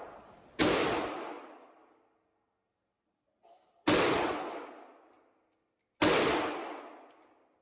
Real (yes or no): yes